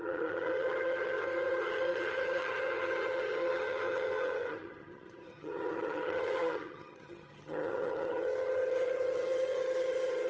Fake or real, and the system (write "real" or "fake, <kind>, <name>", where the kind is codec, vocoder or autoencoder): fake, vocoder, HiFi-GAN